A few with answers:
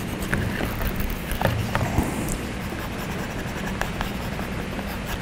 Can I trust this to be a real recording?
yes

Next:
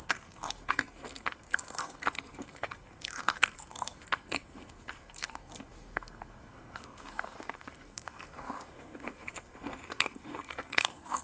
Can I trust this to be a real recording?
no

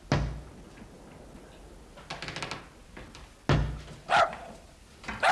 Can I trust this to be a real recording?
yes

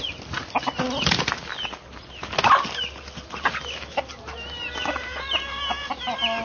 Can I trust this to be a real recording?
yes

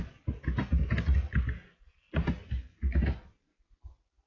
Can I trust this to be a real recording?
yes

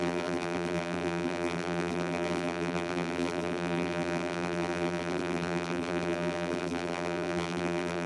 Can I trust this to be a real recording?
no